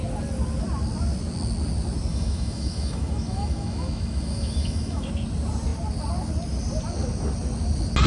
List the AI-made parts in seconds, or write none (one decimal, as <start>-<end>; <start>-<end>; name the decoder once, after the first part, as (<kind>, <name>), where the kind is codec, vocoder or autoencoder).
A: 2.1-5.1 (autoencoder, DAC-VAE)